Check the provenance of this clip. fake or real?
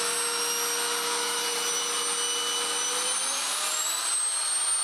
real